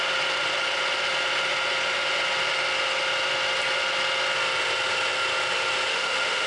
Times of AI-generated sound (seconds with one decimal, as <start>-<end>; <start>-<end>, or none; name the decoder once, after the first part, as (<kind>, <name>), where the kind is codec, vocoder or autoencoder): 5.9-6.5 (autoencoder, DAC-VAE)